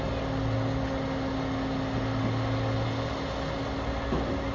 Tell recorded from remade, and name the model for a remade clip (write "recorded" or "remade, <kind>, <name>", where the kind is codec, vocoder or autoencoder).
recorded